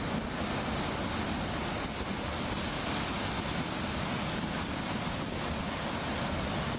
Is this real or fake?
real